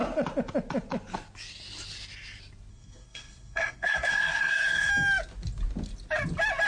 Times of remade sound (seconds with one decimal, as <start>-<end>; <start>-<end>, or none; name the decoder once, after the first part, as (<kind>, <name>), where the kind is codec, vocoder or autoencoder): 2.7-4.9 (codec, SNAC)